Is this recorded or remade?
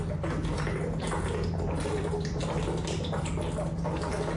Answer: recorded